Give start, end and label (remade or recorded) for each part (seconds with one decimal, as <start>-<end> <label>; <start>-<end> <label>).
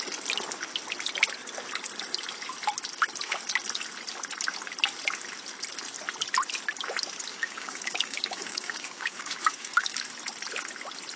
0.0-7.3 recorded; 7.3-10.0 remade; 10.0-11.2 recorded